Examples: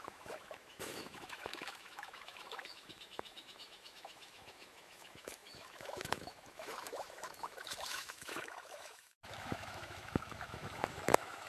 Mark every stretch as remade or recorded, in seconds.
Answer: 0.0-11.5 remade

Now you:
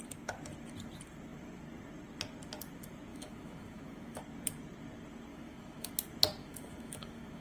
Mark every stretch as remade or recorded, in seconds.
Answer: 0.0-3.1 recorded; 3.1-4.2 remade; 4.2-5.3 recorded; 5.3-5.9 remade; 5.9-6.4 recorded; 6.4-7.4 remade

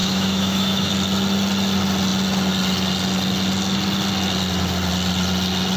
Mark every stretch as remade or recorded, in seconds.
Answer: 0.0-0.9 remade; 0.9-5.8 recorded

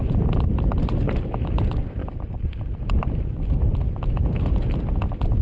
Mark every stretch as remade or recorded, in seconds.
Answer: 0.0-5.4 recorded

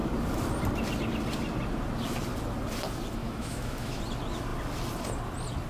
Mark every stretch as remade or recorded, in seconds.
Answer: 0.0-3.2 recorded; 3.2-4.0 remade; 4.0-5.7 recorded